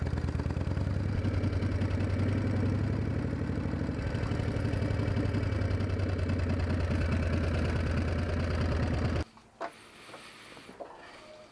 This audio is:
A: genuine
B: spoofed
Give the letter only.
A